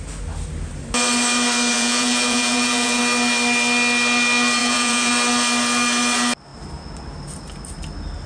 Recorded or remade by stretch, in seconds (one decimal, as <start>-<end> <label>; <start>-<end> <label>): 0.0-1.7 recorded; 1.7-3.0 remade; 3.0-4.6 recorded; 4.6-5.1 remade; 5.1-8.3 recorded